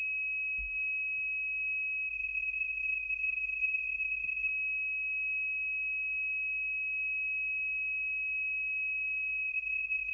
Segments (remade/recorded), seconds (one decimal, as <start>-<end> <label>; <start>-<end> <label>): 0.0-2.1 recorded; 2.1-4.5 remade; 4.5-9.5 recorded; 9.5-10.1 remade